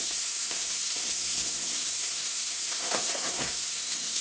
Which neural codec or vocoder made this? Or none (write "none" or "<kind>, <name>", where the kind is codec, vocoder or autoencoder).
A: codec, SNAC